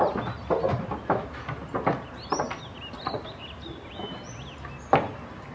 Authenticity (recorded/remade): recorded